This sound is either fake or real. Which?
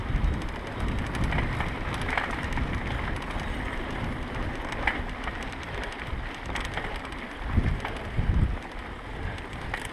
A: real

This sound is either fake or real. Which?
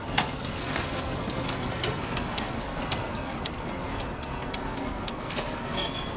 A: fake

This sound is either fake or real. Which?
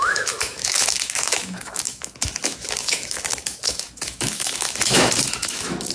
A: fake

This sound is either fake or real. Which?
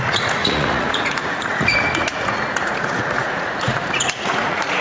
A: fake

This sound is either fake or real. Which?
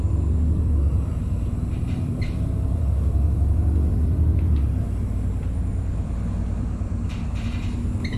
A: fake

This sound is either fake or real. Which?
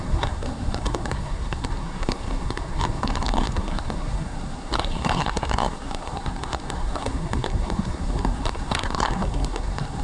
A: fake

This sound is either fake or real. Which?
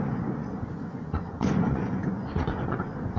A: fake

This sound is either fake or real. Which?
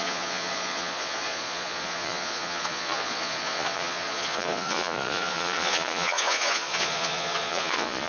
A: fake